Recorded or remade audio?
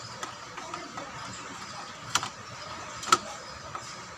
remade